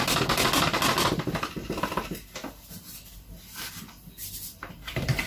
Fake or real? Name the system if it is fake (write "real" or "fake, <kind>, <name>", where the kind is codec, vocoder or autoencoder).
real